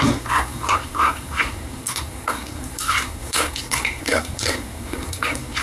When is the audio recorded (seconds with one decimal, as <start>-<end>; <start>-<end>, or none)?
none